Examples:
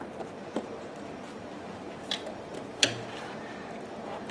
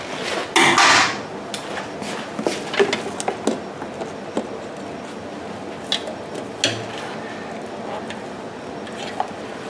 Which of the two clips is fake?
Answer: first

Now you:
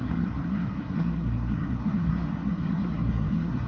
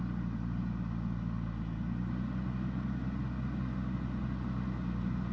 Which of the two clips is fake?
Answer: first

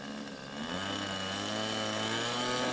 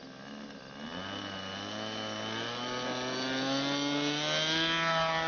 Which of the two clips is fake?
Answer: first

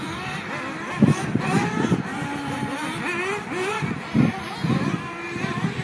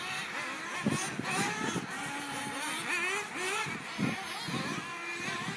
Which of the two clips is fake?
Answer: first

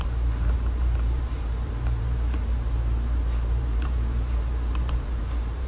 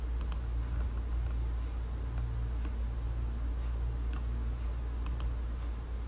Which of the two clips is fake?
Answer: first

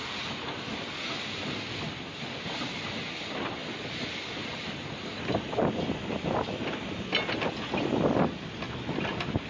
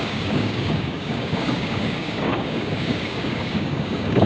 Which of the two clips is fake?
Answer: second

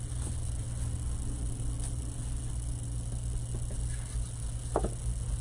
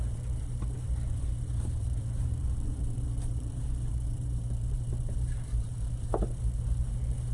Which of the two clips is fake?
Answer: second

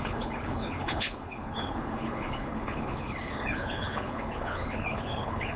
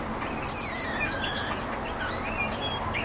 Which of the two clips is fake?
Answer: first